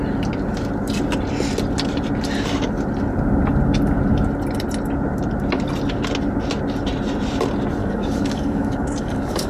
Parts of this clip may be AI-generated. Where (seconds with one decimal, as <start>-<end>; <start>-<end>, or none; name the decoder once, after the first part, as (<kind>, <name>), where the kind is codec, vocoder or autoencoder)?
7.8-9.5 (codec, DAC)